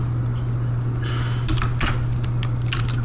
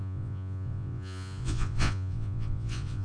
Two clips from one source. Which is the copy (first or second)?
second